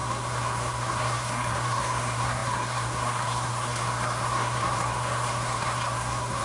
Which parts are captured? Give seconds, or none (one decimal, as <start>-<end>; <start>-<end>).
none